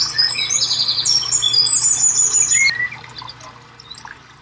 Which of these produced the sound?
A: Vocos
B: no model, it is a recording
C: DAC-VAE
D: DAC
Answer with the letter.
B